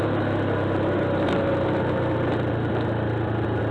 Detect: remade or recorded recorded